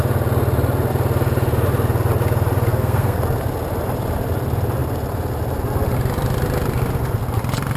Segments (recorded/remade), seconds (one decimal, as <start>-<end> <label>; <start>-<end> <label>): 0.0-2.7 recorded; 2.7-3.2 remade; 3.2-7.8 recorded